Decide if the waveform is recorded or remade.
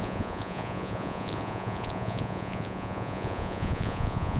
remade